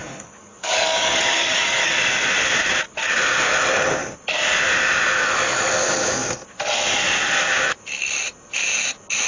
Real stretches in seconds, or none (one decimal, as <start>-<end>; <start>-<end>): 1.9-9.3